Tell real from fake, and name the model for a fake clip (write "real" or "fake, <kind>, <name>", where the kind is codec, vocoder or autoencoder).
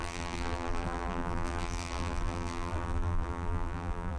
fake, vocoder, BigVGAN v2